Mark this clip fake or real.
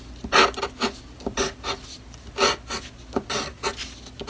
real